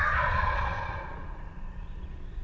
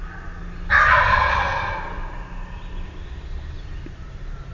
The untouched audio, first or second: second